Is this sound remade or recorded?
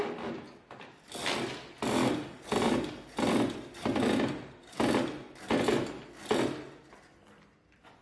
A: recorded